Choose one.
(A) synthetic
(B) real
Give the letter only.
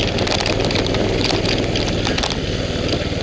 B